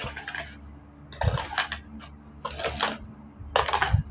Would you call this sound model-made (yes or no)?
no